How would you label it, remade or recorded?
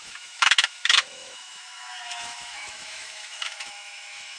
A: remade